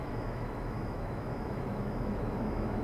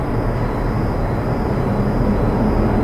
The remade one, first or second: first